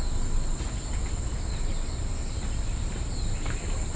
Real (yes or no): yes